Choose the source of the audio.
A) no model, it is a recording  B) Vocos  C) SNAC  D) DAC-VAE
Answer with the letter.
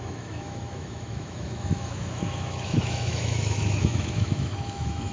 D